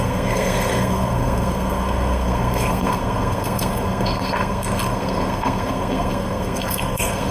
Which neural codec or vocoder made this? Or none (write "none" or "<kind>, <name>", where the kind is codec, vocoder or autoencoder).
codec, SNAC